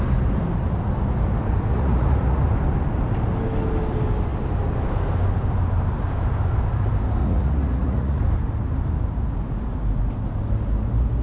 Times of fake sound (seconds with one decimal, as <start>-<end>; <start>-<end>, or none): 1.7-2.4; 7.2-8.2